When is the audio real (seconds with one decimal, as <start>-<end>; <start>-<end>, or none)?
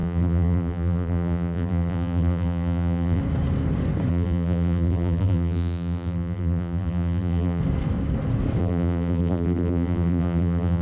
3.2-4.1; 7.6-8.6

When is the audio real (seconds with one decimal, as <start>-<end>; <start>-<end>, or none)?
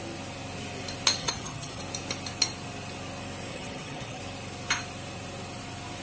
0.0-1.2; 1.8-3.5; 4.2-6.0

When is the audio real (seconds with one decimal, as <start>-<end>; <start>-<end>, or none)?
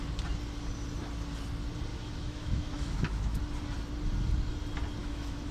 0.0-1.9; 3.4-5.0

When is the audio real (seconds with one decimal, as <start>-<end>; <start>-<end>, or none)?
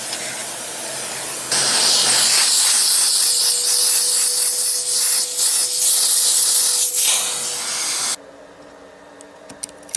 0.0-10.0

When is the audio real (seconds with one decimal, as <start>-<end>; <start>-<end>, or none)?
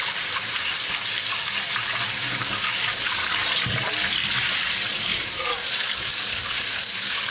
0.0-2.4; 3.3-5.1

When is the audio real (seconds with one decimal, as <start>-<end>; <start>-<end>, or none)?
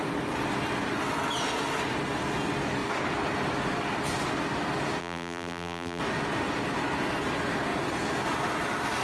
0.0-5.0; 6.0-9.0